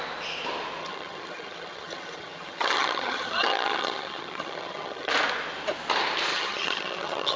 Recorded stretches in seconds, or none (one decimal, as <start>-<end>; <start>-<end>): 0.0-0.8; 5.1-6.3